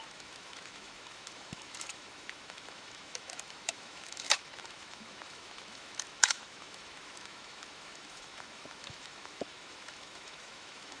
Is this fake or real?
fake